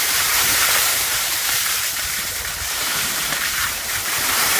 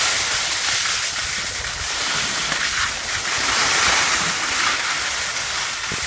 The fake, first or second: first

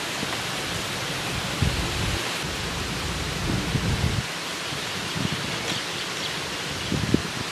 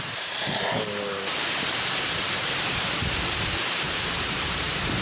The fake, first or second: second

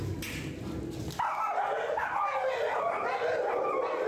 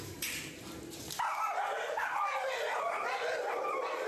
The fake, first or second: second